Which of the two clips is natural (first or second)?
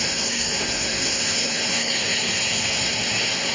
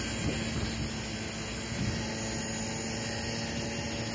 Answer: second